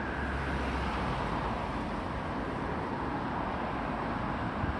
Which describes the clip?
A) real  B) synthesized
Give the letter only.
A